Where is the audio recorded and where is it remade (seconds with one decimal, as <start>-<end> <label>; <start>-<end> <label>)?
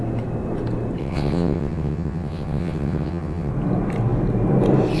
0.0-1.0 recorded; 1.0-3.5 remade; 3.5-5.0 recorded